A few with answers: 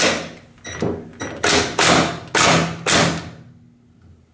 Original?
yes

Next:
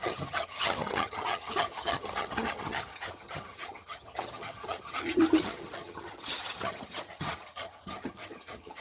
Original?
no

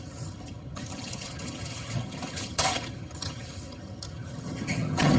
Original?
no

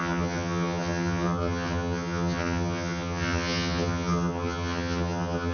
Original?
no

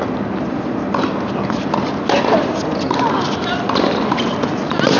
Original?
yes